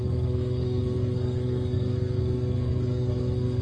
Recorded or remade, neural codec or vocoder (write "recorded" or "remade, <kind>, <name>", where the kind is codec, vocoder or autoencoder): remade, codec, SNAC